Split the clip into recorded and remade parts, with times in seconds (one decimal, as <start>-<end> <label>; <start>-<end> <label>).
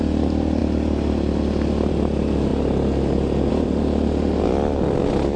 0.0-5.4 recorded